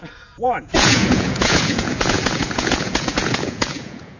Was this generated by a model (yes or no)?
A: yes